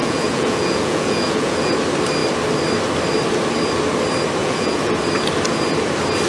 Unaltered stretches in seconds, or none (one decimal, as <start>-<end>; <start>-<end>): 1.7-4.4; 4.9-6.3